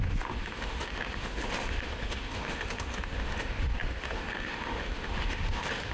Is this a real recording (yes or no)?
no